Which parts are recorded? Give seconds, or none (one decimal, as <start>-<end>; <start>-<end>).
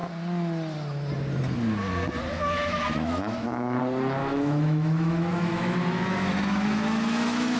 0.0-2.3; 3.8-4.2